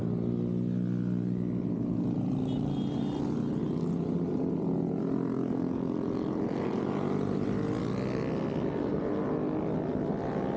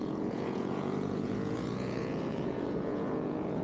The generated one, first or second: second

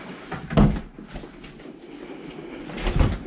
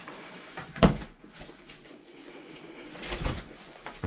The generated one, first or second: second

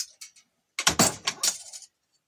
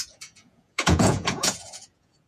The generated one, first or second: second